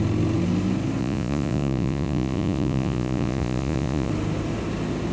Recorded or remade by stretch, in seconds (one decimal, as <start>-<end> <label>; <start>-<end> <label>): 0.0-1.0 recorded; 1.0-4.1 remade; 4.1-5.1 recorded